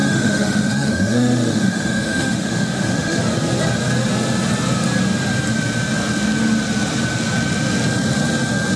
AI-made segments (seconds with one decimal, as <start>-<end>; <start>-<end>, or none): 0.0-3.2